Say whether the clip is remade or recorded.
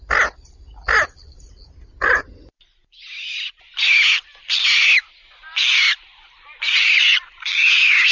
recorded